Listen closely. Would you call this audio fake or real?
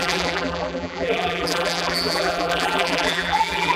fake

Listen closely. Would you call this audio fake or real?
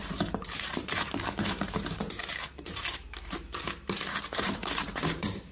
fake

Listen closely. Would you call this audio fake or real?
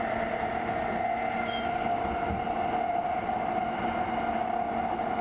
real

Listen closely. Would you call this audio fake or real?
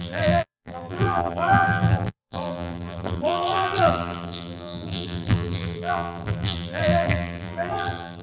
fake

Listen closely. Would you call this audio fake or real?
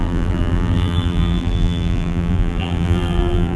fake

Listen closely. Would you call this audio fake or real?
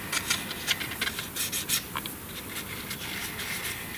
real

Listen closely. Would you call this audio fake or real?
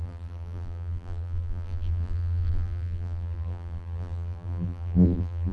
fake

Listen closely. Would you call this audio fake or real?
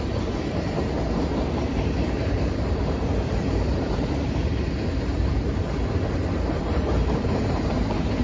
fake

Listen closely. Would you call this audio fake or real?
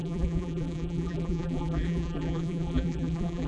fake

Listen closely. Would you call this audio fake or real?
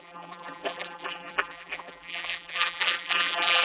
fake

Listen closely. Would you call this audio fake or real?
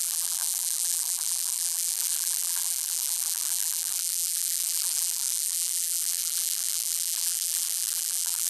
fake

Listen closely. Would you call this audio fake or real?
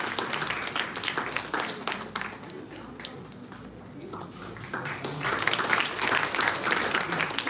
real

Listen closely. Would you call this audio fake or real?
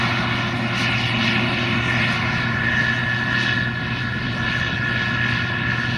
real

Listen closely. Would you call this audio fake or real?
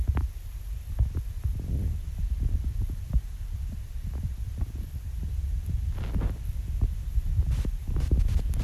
fake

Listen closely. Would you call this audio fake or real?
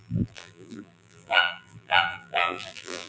fake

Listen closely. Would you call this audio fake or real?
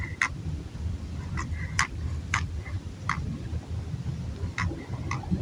real